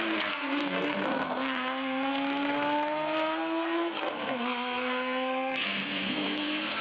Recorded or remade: remade